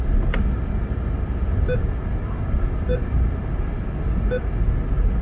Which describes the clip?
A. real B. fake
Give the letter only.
A